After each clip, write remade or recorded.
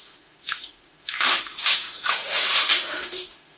remade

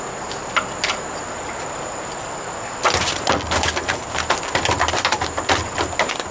recorded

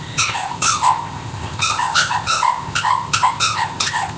remade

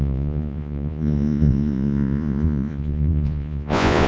remade